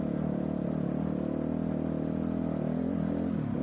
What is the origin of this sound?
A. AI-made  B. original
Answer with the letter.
B